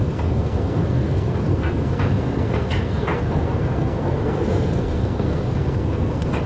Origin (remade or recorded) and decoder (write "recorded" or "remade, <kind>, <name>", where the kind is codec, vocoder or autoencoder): remade, codec, SNAC